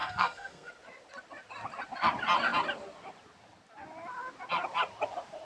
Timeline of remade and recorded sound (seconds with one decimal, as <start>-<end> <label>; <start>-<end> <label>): 0.0-0.7 remade; 0.7-5.4 recorded